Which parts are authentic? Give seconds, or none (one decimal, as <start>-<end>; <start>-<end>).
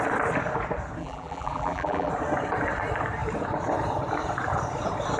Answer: 0.0-1.0; 2.1-5.2